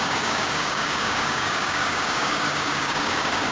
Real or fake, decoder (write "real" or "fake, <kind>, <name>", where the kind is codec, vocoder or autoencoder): fake, codec, DAC